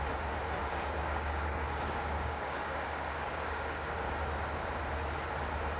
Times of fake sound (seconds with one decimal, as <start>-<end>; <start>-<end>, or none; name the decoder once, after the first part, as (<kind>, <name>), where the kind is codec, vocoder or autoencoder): 0.6-4.1 (codec, DAC)